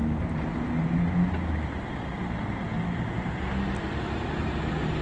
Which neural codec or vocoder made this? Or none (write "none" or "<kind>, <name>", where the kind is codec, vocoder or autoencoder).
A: none